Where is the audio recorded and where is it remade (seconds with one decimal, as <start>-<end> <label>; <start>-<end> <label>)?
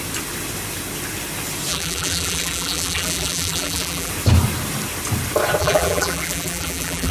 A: 0.0-1.7 recorded; 1.7-4.1 remade; 4.1-5.6 recorded; 5.6-7.1 remade